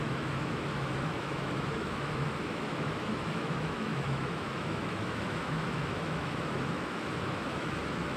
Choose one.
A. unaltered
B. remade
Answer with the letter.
B